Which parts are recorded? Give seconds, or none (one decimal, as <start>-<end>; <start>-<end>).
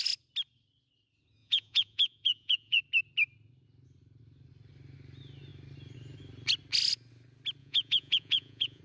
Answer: 0.0-1.4; 2.8-7.6